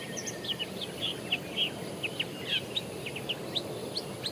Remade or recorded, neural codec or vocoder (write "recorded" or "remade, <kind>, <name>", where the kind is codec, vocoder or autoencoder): recorded